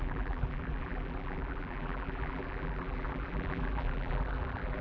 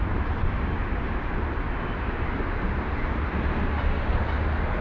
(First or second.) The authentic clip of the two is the second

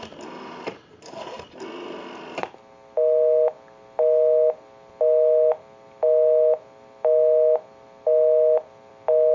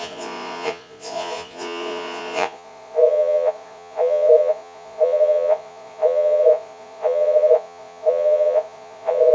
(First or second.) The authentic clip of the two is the first